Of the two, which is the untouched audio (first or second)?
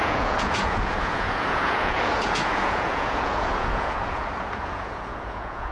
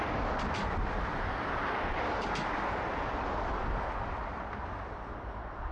second